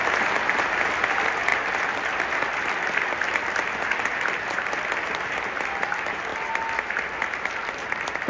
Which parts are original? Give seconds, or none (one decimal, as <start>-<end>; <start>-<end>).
0.0-1.5; 4.9-8.3